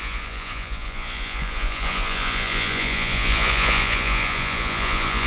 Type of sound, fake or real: fake